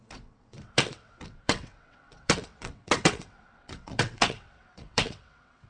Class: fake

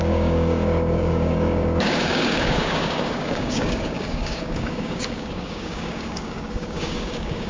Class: fake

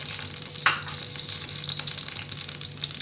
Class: real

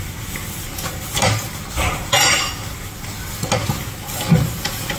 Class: real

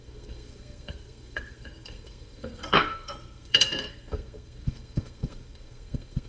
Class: fake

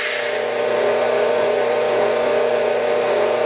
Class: fake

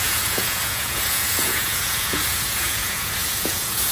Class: fake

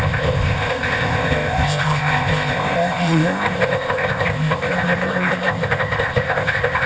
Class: fake